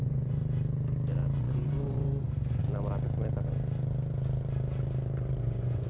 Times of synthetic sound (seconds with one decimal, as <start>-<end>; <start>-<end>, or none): 0.0-0.4; 1.4-2.6; 5.4-5.9